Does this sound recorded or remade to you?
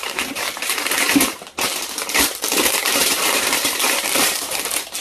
remade